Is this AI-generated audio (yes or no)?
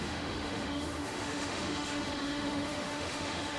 yes